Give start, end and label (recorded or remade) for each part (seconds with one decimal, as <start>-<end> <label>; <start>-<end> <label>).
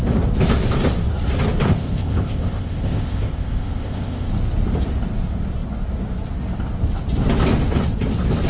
0.0-1.7 recorded; 1.7-4.3 remade; 4.3-8.5 recorded